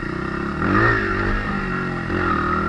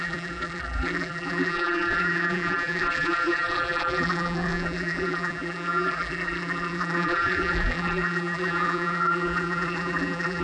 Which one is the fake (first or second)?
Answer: second